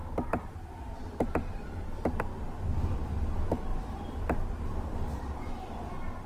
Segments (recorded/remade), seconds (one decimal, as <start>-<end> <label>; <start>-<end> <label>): 0.0-2.2 remade; 2.2-3.7 recorded; 3.7-5.5 remade; 5.5-6.3 recorded

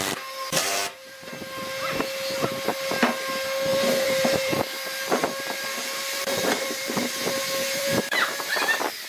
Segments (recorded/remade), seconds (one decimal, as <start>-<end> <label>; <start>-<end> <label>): 0.0-0.6 recorded; 0.6-1.3 remade; 1.3-3.7 recorded; 3.7-8.5 remade; 8.5-9.1 recorded

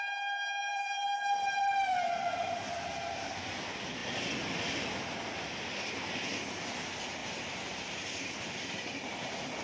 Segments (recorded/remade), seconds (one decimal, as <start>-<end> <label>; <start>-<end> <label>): 0.0-0.7 recorded; 0.7-3.3 remade; 3.3-7.2 recorded; 7.2-8.3 remade; 8.3-9.6 recorded

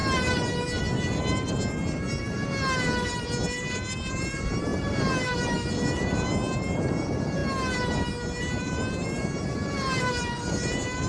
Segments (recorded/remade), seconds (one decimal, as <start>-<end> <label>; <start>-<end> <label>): 0.0-4.1 recorded; 4.1-7.4 remade; 7.4-8.4 recorded; 8.4-11.1 remade